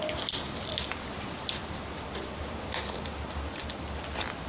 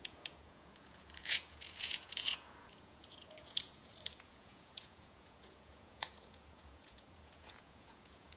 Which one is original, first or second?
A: first